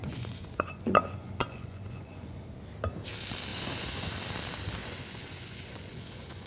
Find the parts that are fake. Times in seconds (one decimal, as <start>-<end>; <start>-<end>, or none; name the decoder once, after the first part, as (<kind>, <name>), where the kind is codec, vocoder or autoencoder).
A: 0.0-2.4 (vocoder, Vocos); 3.5-4.1; 4.8-6.5